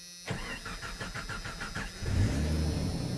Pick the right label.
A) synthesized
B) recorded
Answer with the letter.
B